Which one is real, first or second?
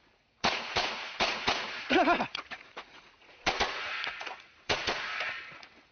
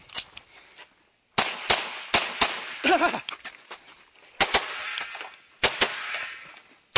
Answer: second